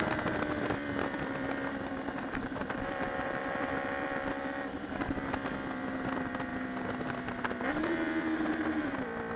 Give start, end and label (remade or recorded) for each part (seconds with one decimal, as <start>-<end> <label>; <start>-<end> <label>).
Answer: 0.0-6.5 remade; 6.5-7.8 recorded; 7.8-9.4 remade

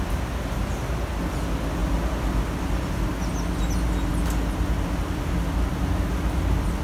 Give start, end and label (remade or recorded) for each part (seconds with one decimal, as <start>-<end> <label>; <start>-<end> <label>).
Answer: 0.0-1.8 recorded; 1.8-2.8 remade; 2.8-6.8 recorded

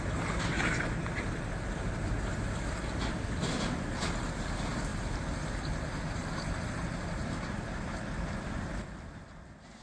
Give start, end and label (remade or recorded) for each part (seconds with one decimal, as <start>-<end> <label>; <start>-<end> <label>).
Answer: 0.0-4.9 recorded; 4.9-9.2 remade; 9.2-9.8 recorded

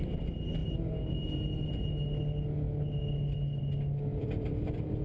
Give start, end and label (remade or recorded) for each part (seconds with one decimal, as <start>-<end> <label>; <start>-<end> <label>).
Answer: 0.0-4.1 recorded; 4.1-4.6 remade; 4.6-5.0 recorded

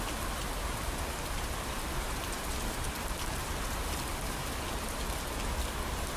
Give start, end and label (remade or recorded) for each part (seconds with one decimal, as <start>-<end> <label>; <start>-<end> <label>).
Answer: 0.0-0.4 recorded; 0.4-4.1 remade; 4.1-6.2 recorded

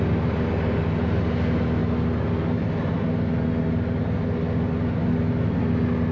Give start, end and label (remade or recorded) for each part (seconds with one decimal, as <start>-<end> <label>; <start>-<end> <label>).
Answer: 0.0-6.1 recorded

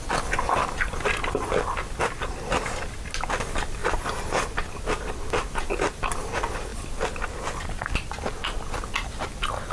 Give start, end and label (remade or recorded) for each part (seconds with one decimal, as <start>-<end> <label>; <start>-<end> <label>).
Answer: 0.0-9.7 recorded